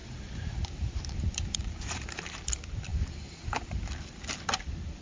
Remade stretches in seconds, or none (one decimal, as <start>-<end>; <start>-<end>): 0.0-2.4; 2.9-4.2